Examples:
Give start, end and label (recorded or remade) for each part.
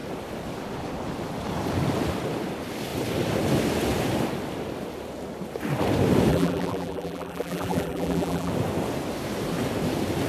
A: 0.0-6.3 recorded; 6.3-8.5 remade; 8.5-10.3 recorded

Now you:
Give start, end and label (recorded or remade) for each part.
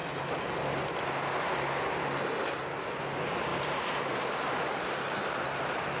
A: 0.0-3.5 recorded; 3.5-6.0 remade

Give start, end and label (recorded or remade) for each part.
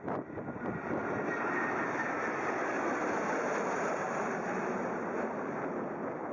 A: 0.0-3.0 recorded; 3.0-4.3 remade; 4.3-6.3 recorded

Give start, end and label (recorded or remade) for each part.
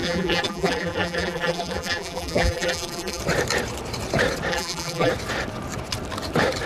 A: 0.0-3.2 remade; 3.2-4.5 recorded; 4.5-5.1 remade; 5.1-6.7 recorded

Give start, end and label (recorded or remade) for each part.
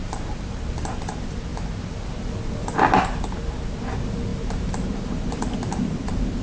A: 0.0-0.6 remade; 0.6-1.5 recorded; 1.5-2.0 remade; 2.0-4.3 recorded; 4.3-5.5 remade; 5.5-6.4 recorded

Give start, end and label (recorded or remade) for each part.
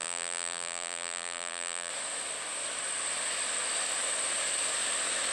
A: 0.0-1.9 remade; 1.9-5.3 recorded